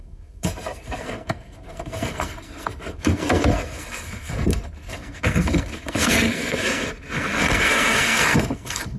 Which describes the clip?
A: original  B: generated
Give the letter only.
B